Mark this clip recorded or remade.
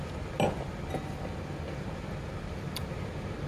recorded